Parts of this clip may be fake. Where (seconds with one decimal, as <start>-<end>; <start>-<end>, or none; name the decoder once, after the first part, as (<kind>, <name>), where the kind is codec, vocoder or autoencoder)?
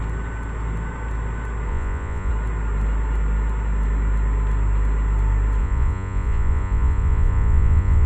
1.7-2.3 (vocoder, Vocos); 5.6-8.1